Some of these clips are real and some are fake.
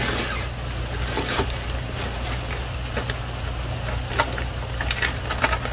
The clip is real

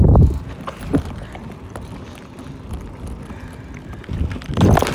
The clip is real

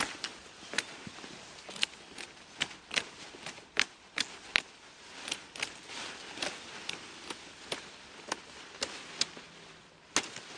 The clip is real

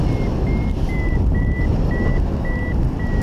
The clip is real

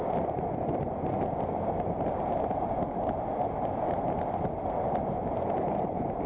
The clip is real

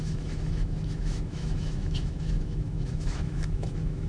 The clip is fake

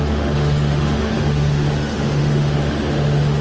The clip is fake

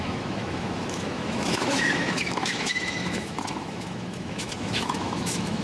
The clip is fake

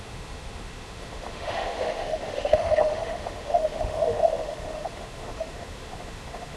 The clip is fake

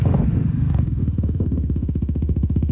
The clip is fake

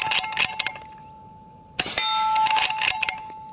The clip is real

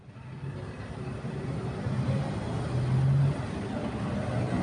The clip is real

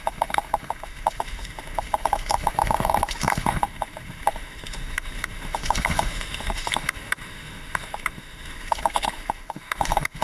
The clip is fake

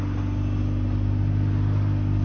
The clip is real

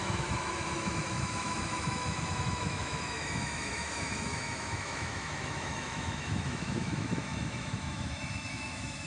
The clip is fake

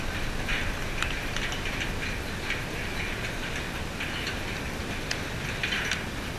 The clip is real